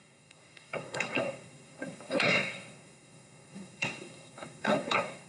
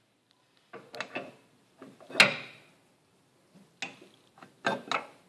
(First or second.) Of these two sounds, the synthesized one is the first